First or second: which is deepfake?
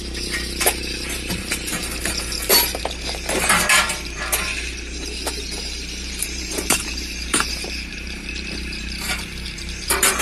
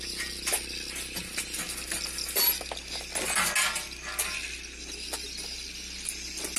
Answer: first